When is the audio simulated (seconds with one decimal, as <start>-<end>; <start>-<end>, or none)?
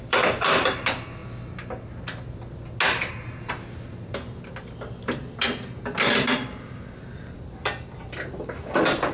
0.0-1.2; 5.8-9.1